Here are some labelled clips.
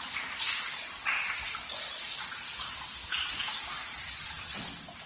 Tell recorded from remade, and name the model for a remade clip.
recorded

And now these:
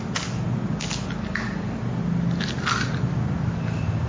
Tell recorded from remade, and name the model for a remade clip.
recorded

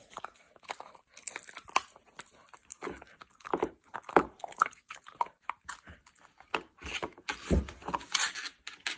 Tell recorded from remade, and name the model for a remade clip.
recorded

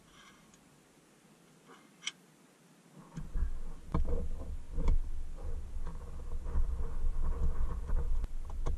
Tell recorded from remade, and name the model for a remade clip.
recorded